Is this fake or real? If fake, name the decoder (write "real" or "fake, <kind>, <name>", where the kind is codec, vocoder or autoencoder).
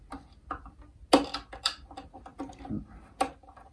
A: real